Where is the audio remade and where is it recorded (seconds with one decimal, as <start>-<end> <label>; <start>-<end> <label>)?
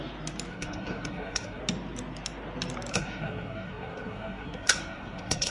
0.0-0.5 recorded; 0.5-1.6 remade; 1.6-2.9 recorded; 2.9-5.5 remade